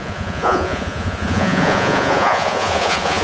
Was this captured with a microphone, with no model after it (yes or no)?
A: no